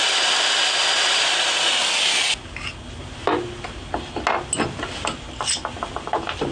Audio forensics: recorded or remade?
recorded